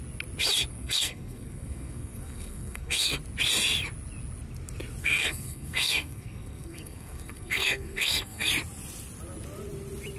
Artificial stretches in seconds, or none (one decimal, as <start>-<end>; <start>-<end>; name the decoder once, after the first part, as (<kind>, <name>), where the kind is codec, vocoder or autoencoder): 0.7-3.2 (codec, SNAC); 5.0-8.5